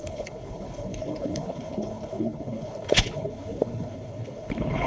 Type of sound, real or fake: fake